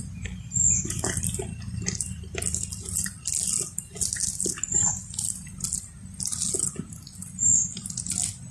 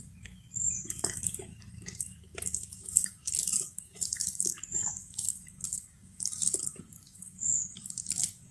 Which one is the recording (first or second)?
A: first